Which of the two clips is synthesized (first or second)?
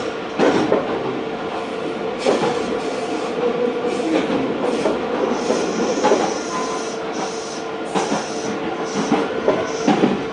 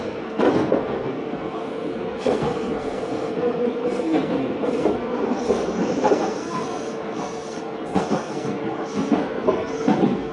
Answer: second